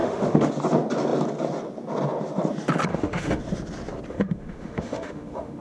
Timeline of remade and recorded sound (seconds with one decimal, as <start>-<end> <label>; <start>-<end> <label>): 0.0-0.5 remade; 0.5-2.9 recorded; 2.9-3.4 remade; 3.4-4.1 recorded; 4.1-5.6 remade